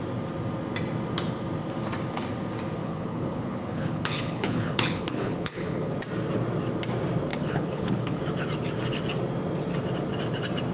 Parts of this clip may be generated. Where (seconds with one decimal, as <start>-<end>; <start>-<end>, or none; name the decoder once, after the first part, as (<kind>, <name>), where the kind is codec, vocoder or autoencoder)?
2.8-5.9 (codec, HILCodec); 7.3-8.2